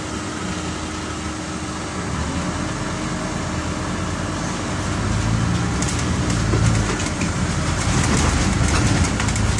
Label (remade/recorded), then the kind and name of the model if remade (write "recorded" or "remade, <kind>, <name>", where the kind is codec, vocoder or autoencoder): recorded